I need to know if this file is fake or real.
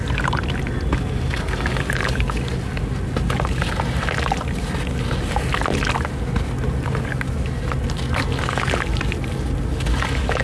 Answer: real